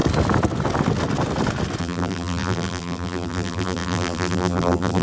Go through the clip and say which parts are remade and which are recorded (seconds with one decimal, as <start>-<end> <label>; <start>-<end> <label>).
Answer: 0.0-1.8 recorded; 1.8-5.0 remade